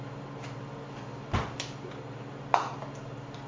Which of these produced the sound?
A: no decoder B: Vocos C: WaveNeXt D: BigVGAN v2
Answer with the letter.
A